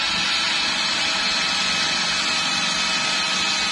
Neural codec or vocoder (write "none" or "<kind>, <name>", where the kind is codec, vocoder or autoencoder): none